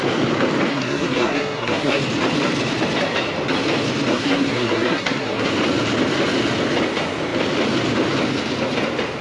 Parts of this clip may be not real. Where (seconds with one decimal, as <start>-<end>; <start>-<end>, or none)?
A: 0.7-2.0; 4.1-5.5